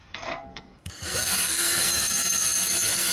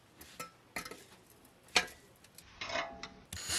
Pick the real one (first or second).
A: second